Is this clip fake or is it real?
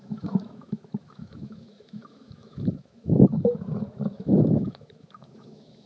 fake